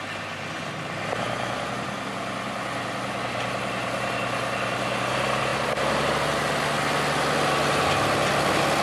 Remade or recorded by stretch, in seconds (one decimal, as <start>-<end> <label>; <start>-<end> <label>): 0.0-8.8 recorded